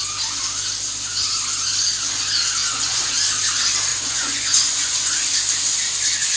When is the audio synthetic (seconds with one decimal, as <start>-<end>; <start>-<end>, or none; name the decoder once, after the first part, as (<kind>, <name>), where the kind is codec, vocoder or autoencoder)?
2.6-3.2 (vocoder, Vocos); 3.9-5.2